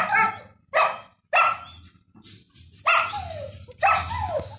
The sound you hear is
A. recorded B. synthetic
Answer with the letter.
A